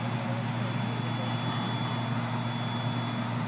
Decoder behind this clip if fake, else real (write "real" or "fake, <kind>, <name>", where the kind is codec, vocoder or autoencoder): real